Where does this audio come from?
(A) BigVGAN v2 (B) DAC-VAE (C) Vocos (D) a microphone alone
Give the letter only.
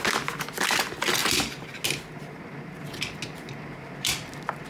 D